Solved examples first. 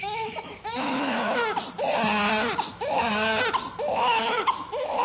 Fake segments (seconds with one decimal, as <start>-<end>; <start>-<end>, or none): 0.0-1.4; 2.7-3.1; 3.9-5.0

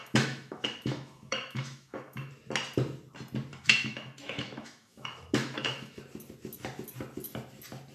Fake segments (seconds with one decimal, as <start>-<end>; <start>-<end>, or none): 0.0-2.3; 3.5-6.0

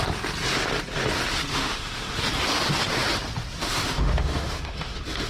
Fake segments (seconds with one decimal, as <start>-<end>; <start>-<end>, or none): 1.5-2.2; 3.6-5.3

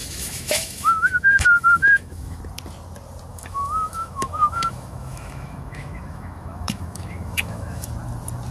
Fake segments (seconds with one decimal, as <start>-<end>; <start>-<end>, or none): 0.0-2.4; 3.3-7.9

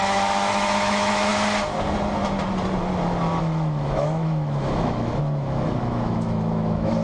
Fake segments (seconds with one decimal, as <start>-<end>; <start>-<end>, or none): 0.0-1.3; 3.4-7.0

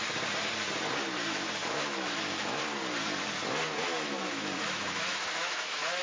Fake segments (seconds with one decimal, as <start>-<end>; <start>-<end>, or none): 1.6-2.6; 3.8-6.0

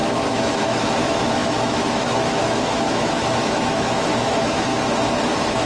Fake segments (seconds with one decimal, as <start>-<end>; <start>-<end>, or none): 0.0-4.7; 5.3-5.7